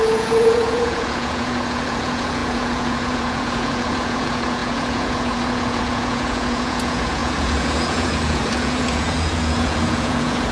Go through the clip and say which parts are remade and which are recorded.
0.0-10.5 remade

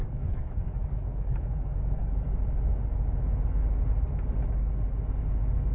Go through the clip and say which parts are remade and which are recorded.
0.0-2.1 remade; 2.1-5.7 recorded

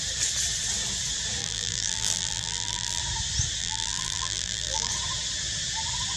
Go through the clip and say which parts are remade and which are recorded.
0.0-1.4 recorded; 1.4-3.0 remade; 3.0-3.6 recorded; 3.6-4.9 remade; 4.9-6.2 recorded

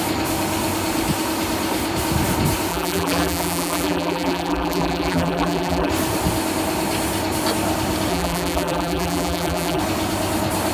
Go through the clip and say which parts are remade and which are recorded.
0.0-2.7 recorded; 2.7-5.9 remade; 5.9-8.1 recorded; 8.1-9.8 remade; 9.8-10.7 recorded

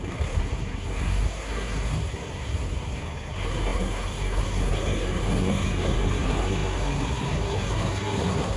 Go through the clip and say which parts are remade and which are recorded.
0.0-8.6 remade

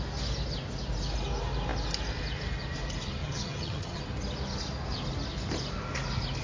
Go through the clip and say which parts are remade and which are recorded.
0.0-3.2 recorded; 3.2-4.0 remade; 4.0-6.4 recorded